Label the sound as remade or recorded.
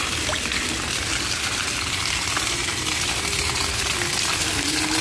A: recorded